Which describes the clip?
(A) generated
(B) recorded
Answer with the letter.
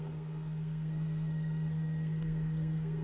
A